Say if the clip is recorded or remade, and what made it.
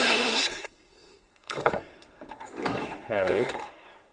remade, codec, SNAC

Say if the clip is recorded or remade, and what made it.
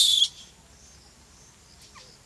recorded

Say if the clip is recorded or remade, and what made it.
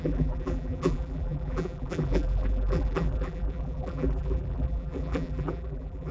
remade, vocoder, BigVGAN v2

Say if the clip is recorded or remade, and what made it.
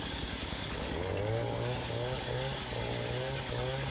remade, codec, DAC